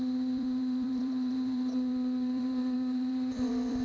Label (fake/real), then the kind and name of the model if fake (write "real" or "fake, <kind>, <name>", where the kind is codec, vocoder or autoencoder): fake, vocoder, BigVGAN v2